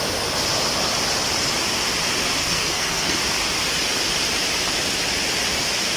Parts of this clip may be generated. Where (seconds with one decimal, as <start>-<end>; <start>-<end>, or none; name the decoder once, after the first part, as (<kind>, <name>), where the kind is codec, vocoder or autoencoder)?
2.4-3.2 (codec, SNAC)